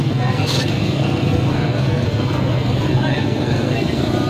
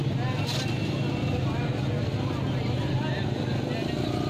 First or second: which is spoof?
first